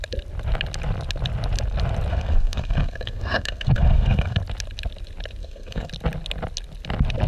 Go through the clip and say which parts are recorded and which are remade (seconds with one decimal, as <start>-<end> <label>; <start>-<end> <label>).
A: 0.0-2.1 recorded; 2.1-4.4 remade; 4.4-5.4 recorded; 5.4-5.9 remade; 5.9-7.3 recorded

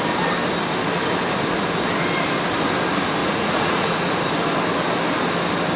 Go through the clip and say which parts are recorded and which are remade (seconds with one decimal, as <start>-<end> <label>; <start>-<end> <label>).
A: 0.0-3.2 recorded; 3.2-4.1 remade; 4.1-5.8 recorded

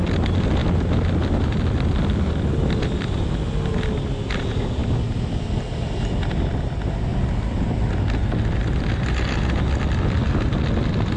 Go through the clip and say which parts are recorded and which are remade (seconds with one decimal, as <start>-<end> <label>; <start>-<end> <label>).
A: 0.0-11.2 recorded

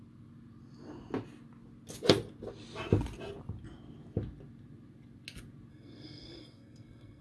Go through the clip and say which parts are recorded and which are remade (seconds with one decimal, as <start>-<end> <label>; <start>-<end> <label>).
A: 0.0-5.7 recorded; 5.7-7.2 remade